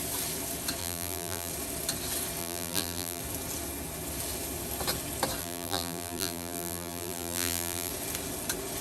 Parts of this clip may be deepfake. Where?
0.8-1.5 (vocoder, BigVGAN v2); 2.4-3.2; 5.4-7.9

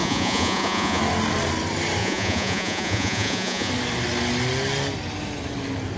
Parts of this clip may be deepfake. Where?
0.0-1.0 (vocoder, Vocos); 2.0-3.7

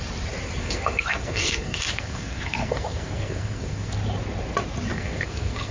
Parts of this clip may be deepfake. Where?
0.6-3.9 (codec, SNAC); 4.9-5.7

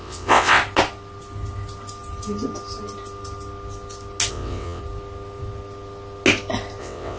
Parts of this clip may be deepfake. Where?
0.0-0.6 (vocoder, WaveNeXt); 4.3-4.8; 6.8-7.2